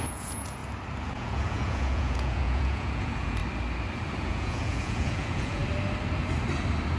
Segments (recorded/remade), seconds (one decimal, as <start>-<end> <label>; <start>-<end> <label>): 0.0-0.6 remade; 0.6-1.1 recorded; 1.1-3.4 remade; 3.4-4.2 recorded; 4.2-5.6 remade; 5.6-7.0 recorded